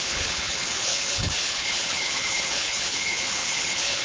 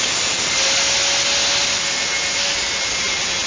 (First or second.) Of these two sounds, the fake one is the first